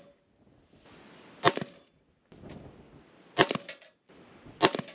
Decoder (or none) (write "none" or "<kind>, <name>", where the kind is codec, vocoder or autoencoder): none